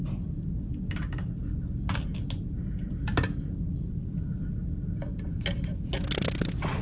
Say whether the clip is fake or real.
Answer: real